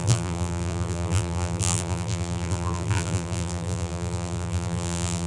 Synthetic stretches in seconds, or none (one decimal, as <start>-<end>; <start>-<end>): 0.0-5.3